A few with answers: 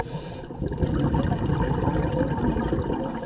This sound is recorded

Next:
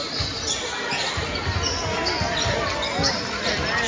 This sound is recorded